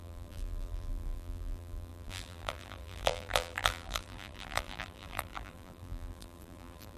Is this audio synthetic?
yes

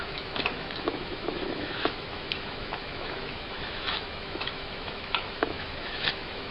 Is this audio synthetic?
yes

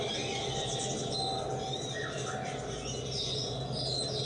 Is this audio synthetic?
no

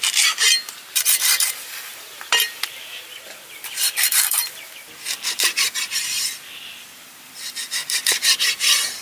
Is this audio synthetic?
yes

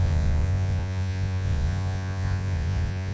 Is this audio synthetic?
yes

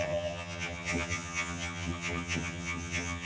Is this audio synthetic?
yes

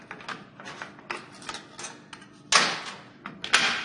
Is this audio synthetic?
no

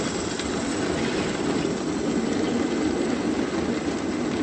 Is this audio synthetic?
no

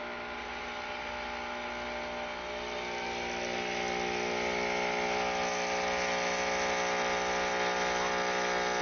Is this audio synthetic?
no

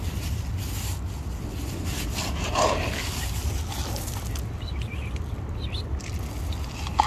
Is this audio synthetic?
no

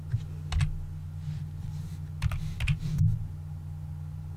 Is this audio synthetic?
no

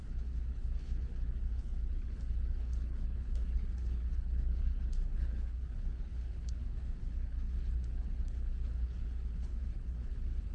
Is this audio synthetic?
yes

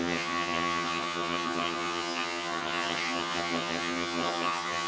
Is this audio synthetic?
yes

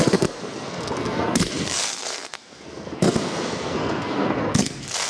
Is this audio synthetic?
yes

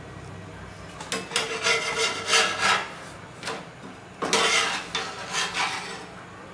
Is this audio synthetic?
no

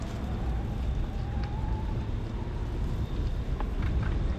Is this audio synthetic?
no